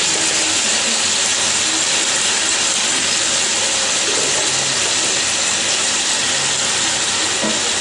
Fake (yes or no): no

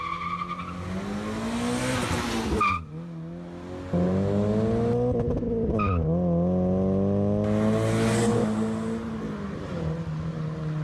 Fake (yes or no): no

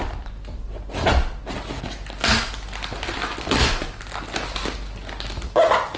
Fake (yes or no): no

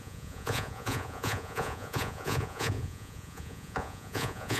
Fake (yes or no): yes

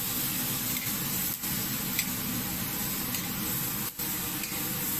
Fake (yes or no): no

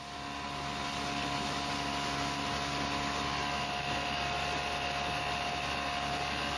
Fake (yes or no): no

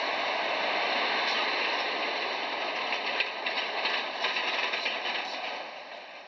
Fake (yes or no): no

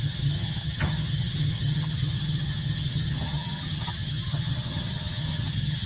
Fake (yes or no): yes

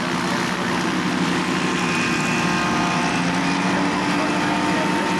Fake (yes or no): no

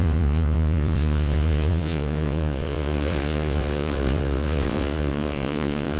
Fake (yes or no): yes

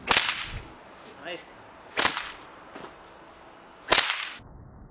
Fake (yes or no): no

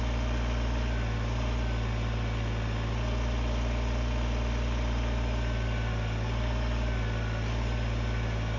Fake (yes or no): no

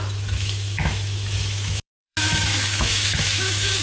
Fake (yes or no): yes